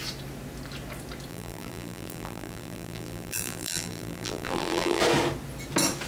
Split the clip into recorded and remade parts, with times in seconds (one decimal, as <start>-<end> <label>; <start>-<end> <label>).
0.0-1.3 recorded; 1.3-5.0 remade; 5.0-6.1 recorded